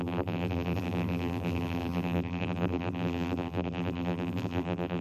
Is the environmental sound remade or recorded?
remade